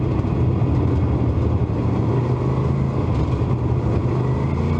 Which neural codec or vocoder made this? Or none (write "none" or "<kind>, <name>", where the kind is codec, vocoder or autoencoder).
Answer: none